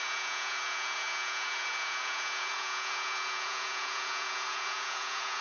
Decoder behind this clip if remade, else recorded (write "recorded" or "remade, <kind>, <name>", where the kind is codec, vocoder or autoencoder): remade, vocoder, Vocos